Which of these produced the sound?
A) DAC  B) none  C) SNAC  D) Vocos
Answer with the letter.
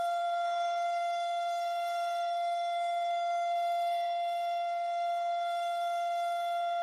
C